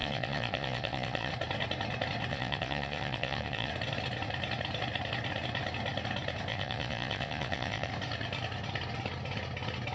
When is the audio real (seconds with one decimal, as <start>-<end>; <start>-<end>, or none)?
1.3-2.3; 3.7-6.5; 7.9-9.9